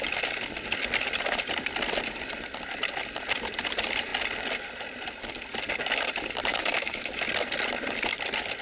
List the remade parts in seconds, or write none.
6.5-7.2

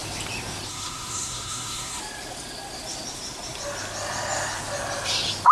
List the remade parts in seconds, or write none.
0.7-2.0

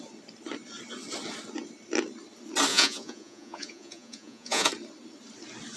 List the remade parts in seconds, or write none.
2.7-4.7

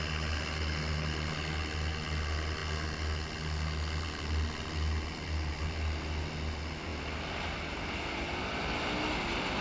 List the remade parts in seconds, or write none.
none

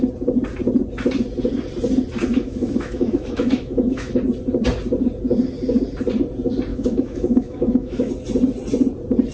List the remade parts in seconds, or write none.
2.3-4.1; 6.7-8.1

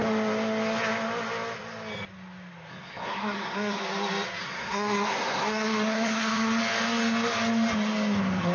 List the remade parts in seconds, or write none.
2.7-3.8; 4.4-6.6

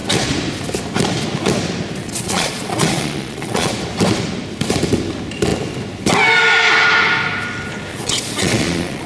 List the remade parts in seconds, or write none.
2.0-3.7; 7.9-9.1